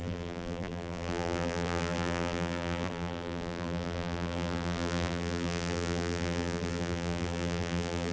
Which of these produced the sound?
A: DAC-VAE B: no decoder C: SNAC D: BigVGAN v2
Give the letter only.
D